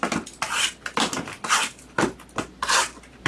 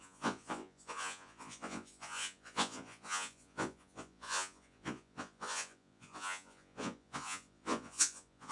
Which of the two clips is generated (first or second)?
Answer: second